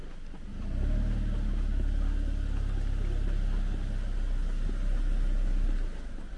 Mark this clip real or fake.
real